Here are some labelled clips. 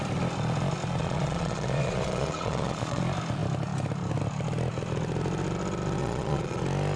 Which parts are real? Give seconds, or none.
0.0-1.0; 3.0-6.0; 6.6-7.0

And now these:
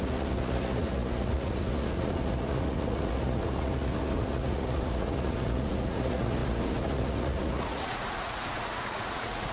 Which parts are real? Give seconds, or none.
none

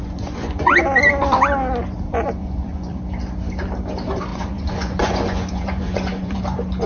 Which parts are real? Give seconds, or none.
0.7-2.4; 3.0-4.3; 6.4-6.9

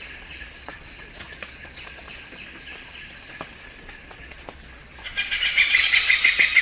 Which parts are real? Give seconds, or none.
none

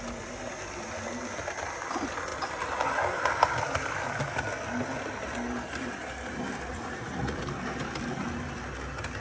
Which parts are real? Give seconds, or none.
0.0-6.7; 7.4-9.2

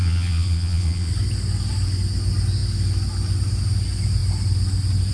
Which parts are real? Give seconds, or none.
1.1-5.1

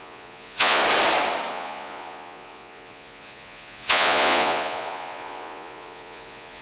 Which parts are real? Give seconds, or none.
0.8-1.5